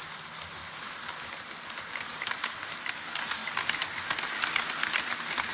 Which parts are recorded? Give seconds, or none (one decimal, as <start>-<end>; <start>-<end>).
0.0-5.5